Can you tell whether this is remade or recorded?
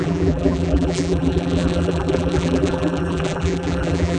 remade